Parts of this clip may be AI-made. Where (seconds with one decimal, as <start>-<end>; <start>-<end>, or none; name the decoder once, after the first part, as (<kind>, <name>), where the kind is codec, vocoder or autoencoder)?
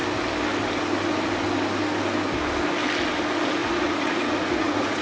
3.6-5.0 (vocoder, Vocos)